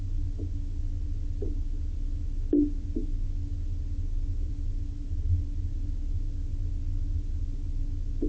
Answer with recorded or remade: recorded